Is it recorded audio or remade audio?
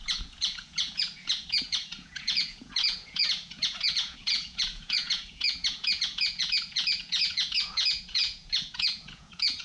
remade